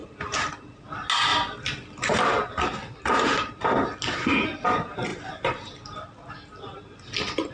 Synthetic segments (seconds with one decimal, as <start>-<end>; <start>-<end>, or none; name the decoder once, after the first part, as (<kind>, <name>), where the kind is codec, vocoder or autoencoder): 0.0-0.8 (vocoder, BigVGAN v2); 5.1-6.3